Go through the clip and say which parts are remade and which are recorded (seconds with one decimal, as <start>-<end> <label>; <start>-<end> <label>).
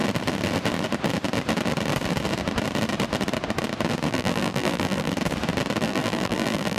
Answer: 0.0-4.1 recorded; 4.1-5.1 remade; 5.1-5.8 recorded; 5.8-6.8 remade